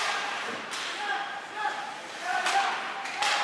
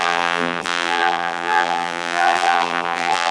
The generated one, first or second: second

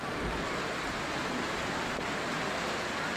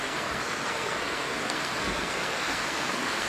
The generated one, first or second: second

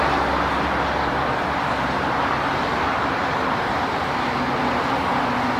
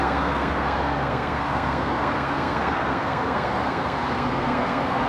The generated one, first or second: second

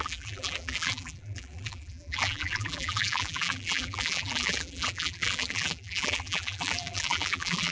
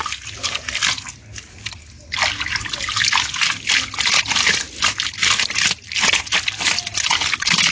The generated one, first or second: first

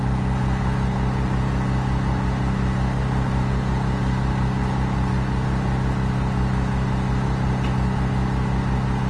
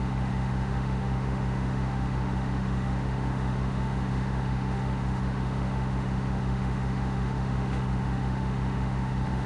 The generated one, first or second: second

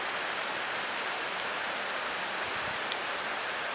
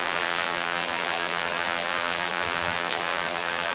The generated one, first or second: second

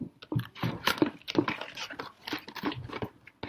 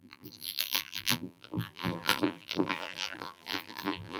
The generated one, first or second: second